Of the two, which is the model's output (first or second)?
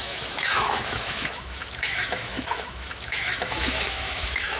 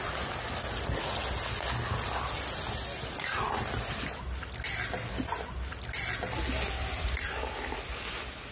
first